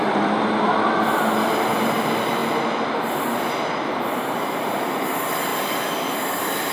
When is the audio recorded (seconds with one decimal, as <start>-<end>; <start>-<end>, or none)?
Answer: 0.0-5.5